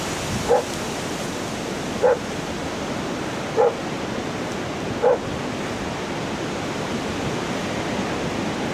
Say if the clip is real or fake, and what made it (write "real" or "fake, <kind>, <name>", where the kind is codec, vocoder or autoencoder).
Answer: real